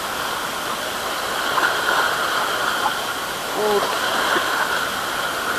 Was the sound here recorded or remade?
recorded